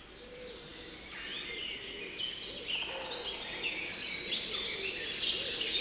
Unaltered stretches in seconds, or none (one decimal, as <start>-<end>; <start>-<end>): 0.0-5.8